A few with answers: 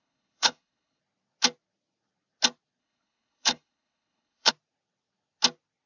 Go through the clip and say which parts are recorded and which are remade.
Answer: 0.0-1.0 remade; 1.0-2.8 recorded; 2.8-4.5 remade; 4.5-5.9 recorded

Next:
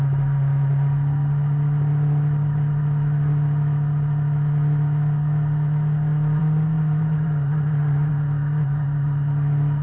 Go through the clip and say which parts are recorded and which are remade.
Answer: 0.0-6.4 recorded; 6.4-8.1 remade; 8.1-9.8 recorded

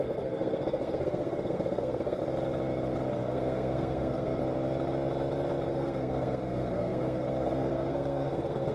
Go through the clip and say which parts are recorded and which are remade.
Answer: 0.0-2.2 remade; 2.2-3.1 recorded; 3.1-4.4 remade; 4.4-5.7 recorded; 5.7-8.7 remade

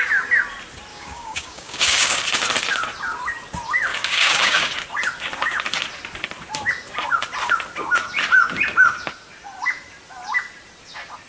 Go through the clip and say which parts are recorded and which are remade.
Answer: 0.0-0.9 recorded; 0.9-2.2 remade; 2.2-3.9 recorded; 3.9-4.7 remade; 4.7-11.3 recorded

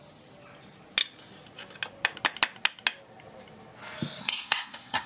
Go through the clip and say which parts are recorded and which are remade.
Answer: 0.0-4.2 recorded; 4.2-5.1 remade

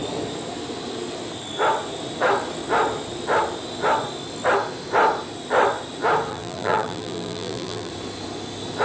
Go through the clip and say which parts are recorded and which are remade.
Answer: 0.0-6.3 recorded; 6.3-7.9 remade; 7.9-8.8 recorded

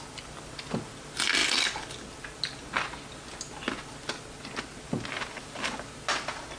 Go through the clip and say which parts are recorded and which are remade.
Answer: 0.0-6.6 recorded

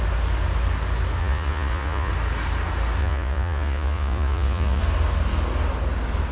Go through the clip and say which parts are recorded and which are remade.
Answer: 0.0-1.2 recorded; 1.2-2.1 remade; 2.1-3.0 recorded; 3.0-4.8 remade; 4.8-6.3 recorded